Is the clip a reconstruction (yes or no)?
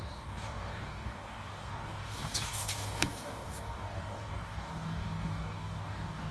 yes